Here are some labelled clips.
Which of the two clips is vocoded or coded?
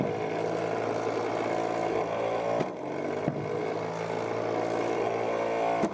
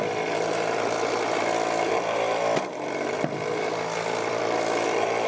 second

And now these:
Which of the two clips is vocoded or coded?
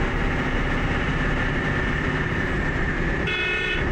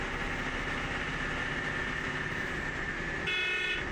first